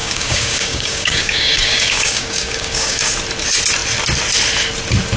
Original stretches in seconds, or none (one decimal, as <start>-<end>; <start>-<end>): 3.1-5.2